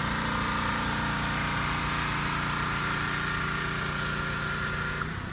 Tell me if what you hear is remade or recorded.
recorded